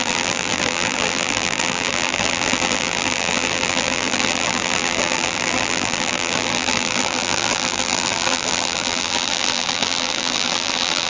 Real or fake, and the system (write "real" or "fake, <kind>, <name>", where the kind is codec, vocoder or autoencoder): fake, vocoder, BigVGAN v2